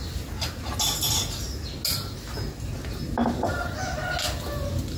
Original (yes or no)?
yes